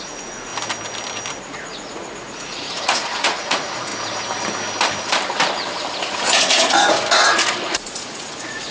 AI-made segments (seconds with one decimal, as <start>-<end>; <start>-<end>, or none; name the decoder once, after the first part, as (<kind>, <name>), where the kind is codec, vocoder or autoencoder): 0.0-0.5 (vocoder, Vocos); 1.3-3.9; 5.9-8.7